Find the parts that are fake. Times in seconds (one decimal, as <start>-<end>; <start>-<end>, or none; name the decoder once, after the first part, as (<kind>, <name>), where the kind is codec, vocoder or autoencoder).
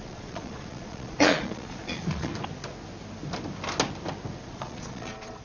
0.0-2.3 (vocoder, Vocos); 4.4-5.4